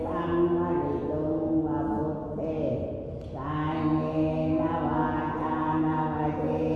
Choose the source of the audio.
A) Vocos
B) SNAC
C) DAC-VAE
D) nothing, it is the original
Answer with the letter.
D